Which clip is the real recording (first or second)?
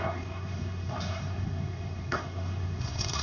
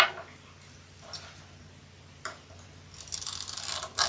second